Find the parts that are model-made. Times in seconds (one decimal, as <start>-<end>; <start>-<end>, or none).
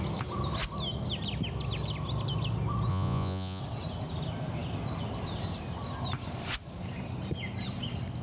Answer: 2.9-3.6